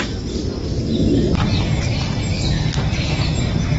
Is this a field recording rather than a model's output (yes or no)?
yes